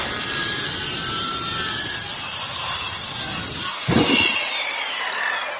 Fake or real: real